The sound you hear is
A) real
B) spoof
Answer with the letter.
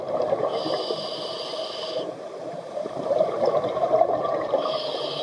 B